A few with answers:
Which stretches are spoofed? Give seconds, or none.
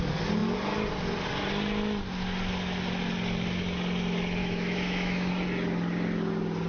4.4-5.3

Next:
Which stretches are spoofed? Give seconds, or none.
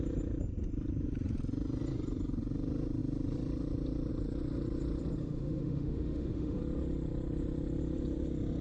5.2-6.6